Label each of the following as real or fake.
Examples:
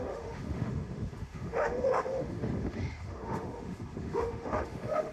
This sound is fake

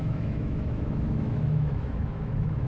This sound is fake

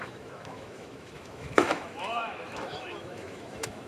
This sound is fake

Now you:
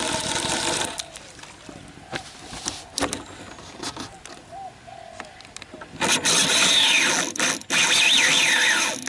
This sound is real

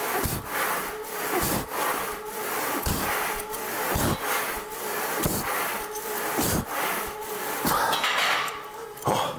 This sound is real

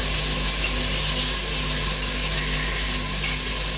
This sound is real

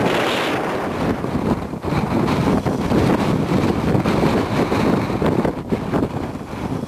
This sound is real